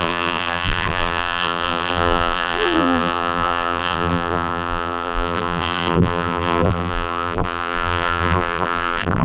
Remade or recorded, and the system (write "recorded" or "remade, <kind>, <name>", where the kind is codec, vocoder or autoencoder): remade, vocoder, BigVGAN v2